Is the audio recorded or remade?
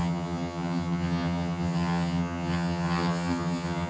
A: remade